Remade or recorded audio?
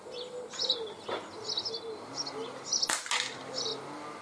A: recorded